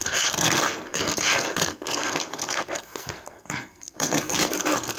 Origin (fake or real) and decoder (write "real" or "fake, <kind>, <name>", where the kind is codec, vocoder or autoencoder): fake, codec, SNAC